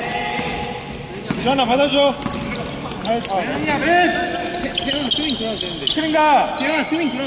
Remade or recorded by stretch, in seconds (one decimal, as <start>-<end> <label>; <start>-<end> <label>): 0.0-7.3 recorded